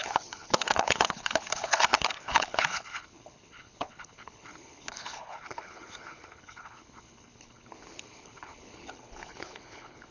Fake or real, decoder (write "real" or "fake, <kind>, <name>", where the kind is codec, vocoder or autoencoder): fake, codec, HILCodec